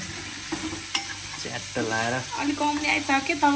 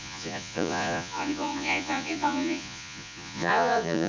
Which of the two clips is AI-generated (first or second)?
second